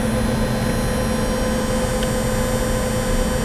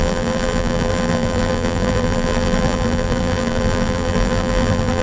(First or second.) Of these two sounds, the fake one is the second